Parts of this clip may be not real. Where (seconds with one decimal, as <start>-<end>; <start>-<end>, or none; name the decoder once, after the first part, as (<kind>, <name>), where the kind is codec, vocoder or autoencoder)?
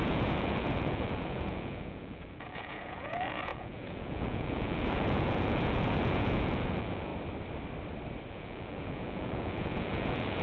0.0-7.1 (vocoder, Vocos); 8.3-10.4